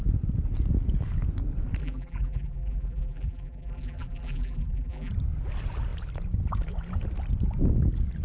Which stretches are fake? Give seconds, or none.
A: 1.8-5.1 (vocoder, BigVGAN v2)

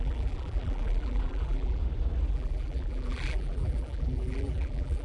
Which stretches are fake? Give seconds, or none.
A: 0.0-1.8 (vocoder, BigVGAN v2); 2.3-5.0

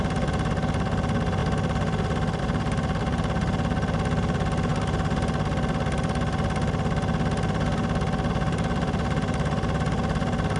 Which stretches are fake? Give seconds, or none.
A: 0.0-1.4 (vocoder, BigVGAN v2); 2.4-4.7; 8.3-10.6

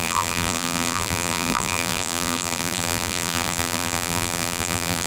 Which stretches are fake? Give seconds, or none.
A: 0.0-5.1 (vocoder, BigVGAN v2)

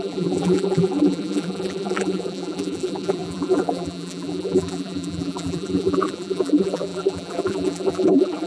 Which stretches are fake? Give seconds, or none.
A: 0.0-8.5 (vocoder, BigVGAN v2)

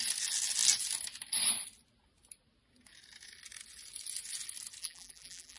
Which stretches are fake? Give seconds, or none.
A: 4.8-5.6 (vocoder, BigVGAN v2)

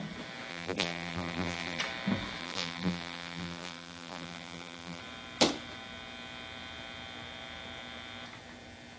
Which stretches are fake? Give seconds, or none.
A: 0.5-1.8 (vocoder, BigVGAN v2); 2.4-5.0